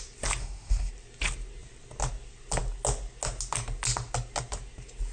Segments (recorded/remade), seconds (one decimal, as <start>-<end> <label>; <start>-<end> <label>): 0.0-0.4 recorded; 0.4-0.9 remade; 0.9-5.1 recorded